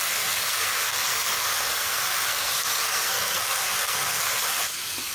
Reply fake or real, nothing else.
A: fake